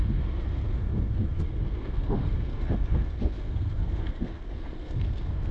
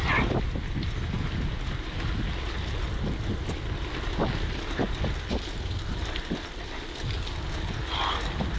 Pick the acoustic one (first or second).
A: second